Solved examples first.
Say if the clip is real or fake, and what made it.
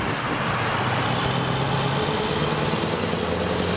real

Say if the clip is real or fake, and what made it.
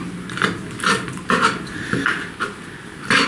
real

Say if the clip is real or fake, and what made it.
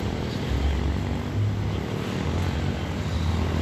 real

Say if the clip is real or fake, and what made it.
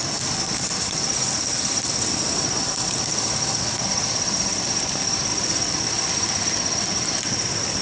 real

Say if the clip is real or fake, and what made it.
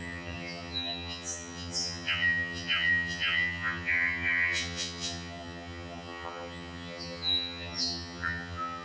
fake, vocoder, HiFi-GAN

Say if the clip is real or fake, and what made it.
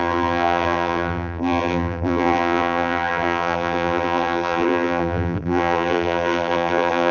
fake, vocoder, BigVGAN v2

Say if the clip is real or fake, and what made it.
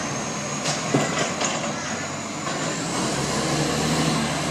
real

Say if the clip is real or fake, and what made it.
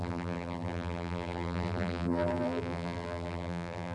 fake, vocoder, BigVGAN v2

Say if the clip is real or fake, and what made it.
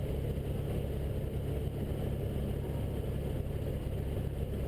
real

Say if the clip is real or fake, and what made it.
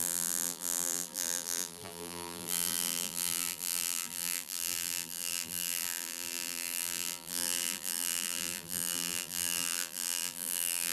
fake, vocoder, BigVGAN v2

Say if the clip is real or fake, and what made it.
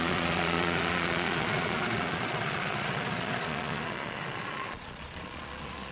fake, vocoder, Vocos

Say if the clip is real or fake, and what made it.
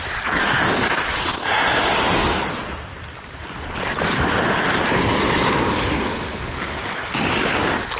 real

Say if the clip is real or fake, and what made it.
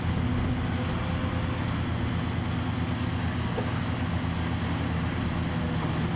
real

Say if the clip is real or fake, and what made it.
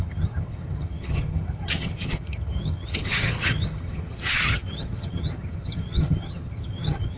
fake, vocoder, HiFi-GAN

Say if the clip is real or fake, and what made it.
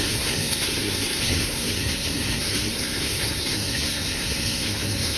fake, codec, SNAC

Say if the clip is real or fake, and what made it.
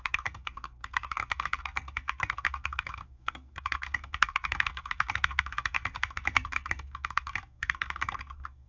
fake, codec, SNAC